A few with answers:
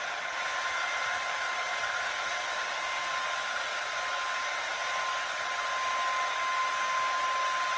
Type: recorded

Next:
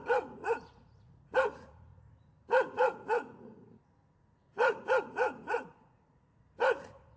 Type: remade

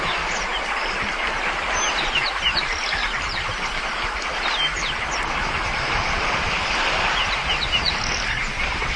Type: recorded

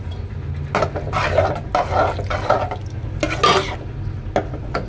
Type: recorded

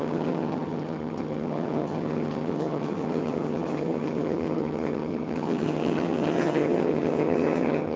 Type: remade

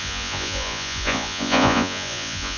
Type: remade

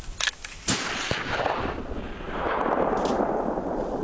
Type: recorded